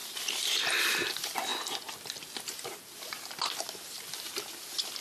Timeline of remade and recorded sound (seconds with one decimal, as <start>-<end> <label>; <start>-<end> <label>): 0.0-5.0 recorded